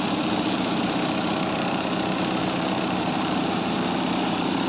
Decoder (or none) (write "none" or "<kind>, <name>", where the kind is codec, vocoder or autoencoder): vocoder, BigVGAN v2